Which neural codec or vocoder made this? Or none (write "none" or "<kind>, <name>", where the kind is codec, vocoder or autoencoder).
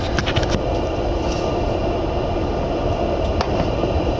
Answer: none